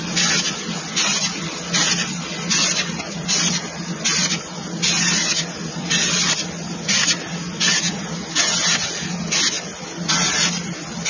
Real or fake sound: real